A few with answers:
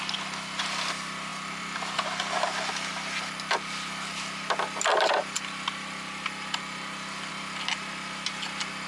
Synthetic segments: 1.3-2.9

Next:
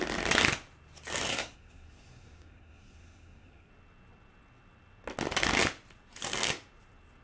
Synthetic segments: 1.3-3.7

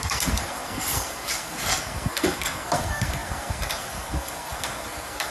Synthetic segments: 0.0-5.3

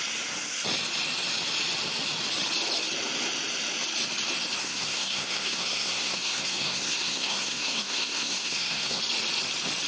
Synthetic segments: 4.6-9.0

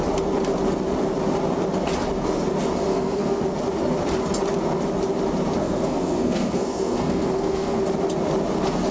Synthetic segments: 2.9-3.4; 5.6-7.8

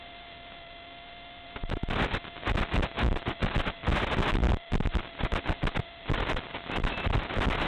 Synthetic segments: none

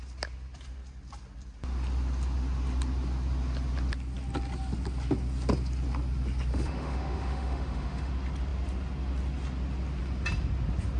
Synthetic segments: 6.5-8.1

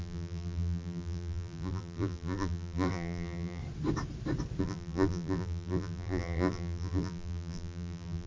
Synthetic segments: 0.0-3.6; 4.6-8.3